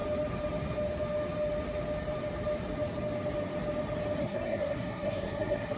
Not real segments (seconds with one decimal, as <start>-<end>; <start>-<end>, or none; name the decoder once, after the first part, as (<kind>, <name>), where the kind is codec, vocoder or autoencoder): 4.2-5.8 (codec, SNAC)